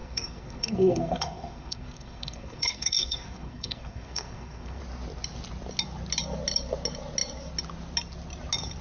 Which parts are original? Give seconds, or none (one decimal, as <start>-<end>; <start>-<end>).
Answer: 4.8-8.8